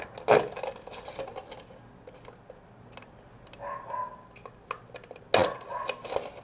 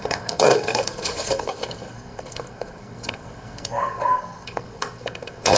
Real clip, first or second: first